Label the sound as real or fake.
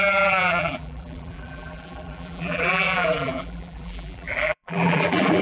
fake